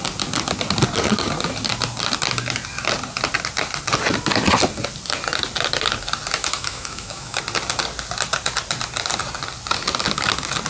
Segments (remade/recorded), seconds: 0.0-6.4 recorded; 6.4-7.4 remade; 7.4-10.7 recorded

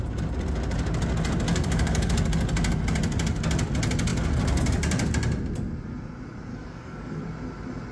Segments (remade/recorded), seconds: 0.0-1.5 recorded; 1.5-2.1 remade; 2.1-6.5 recorded; 6.5-7.2 remade; 7.2-7.9 recorded

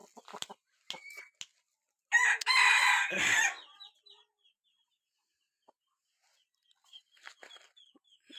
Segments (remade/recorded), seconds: 0.0-8.4 recorded

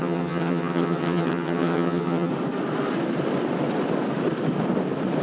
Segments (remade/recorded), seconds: 0.0-2.3 remade; 2.3-5.2 recorded

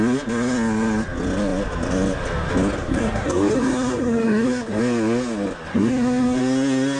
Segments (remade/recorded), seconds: 0.0-2.9 recorded; 2.9-4.8 remade; 4.8-5.7 recorded; 5.7-6.4 remade; 6.4-7.0 recorded